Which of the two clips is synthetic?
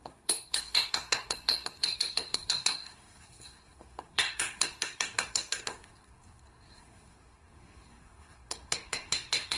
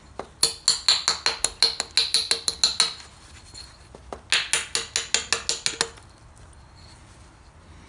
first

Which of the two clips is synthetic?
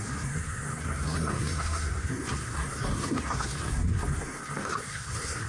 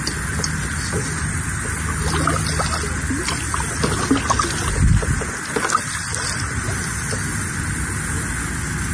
first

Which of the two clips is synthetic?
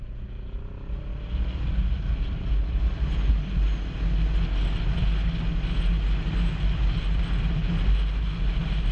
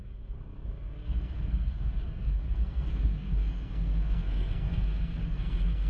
second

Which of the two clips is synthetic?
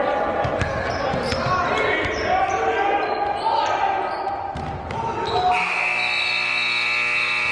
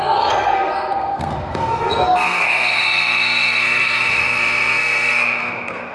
second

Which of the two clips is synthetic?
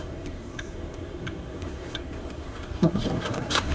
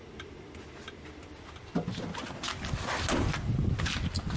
first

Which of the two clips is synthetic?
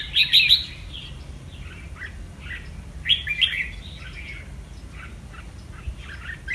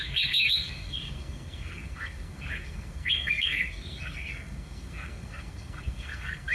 second